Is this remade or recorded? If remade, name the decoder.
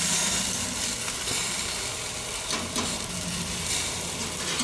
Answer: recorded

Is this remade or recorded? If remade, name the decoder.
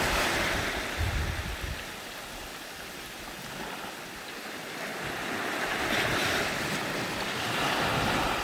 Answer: recorded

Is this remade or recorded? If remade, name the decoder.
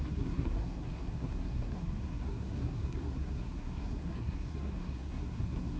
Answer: remade, codec, SNAC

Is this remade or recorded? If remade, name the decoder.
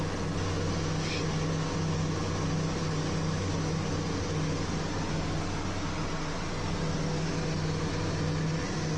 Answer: recorded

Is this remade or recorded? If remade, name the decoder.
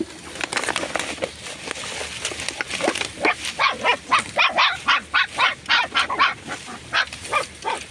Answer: recorded